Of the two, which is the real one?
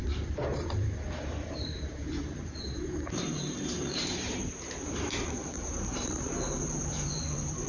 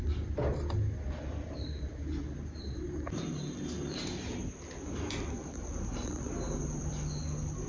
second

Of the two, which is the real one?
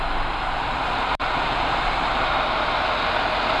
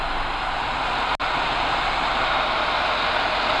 second